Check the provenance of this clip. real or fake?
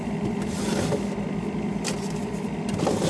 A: real